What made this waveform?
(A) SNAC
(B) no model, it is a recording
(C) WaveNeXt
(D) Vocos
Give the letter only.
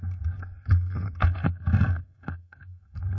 A